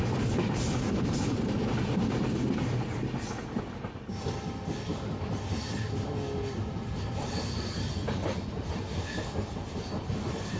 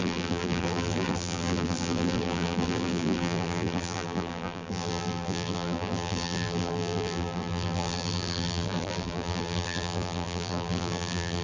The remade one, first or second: second